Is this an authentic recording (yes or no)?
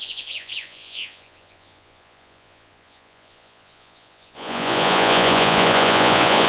no